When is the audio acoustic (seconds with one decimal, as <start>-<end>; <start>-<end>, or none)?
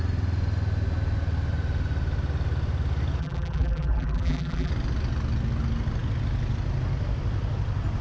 0.0-3.2; 4.7-8.0